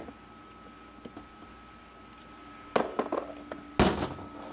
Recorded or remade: recorded